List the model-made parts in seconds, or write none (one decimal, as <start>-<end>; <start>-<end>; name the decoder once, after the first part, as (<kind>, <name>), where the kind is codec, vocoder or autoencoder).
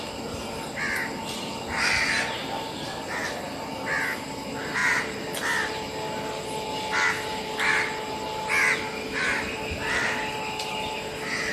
2.4-4.3 (vocoder, BigVGAN v2); 4.8-5.8; 7.3-7.9